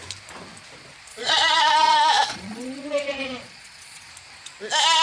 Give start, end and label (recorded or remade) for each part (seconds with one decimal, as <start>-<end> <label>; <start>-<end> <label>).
0.0-1.1 recorded; 1.1-4.1 remade; 4.1-5.0 recorded

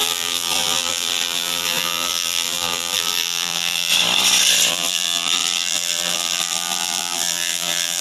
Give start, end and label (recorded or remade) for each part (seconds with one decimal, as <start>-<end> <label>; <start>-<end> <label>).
0.0-3.9 remade; 3.9-4.7 recorded; 4.7-8.0 remade

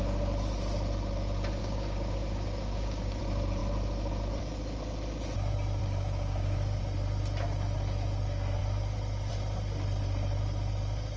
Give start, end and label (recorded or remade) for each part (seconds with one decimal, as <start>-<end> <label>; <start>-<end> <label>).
0.0-1.6 recorded; 1.6-3.2 remade; 3.2-5.8 recorded; 5.8-6.8 remade; 6.8-11.2 recorded

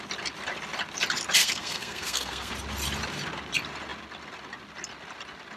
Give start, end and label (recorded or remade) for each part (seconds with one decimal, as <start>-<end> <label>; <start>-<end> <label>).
0.0-1.4 recorded; 1.4-2.5 remade; 2.5-5.6 recorded

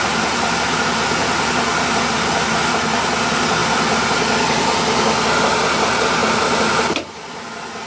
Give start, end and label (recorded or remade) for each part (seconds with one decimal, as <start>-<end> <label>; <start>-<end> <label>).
0.0-7.9 recorded

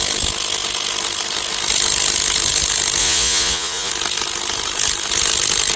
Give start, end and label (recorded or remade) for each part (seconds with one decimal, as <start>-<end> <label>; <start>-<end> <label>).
0.0-3.0 recorded; 3.0-3.9 remade; 3.9-5.8 recorded